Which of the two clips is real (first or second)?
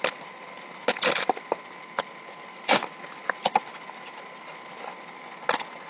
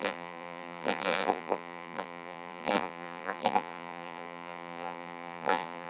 first